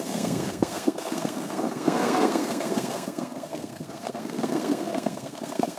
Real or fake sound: fake